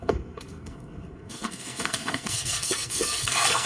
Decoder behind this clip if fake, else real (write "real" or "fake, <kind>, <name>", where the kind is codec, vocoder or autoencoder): fake, codec, SNAC